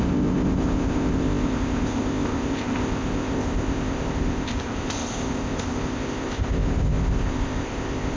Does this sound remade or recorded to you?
remade